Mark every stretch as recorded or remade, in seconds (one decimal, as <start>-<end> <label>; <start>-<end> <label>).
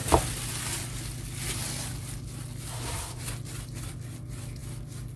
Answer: 0.0-2.7 recorded; 2.7-3.2 remade; 3.2-5.2 recorded